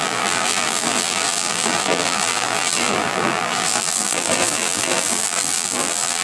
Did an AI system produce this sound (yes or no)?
yes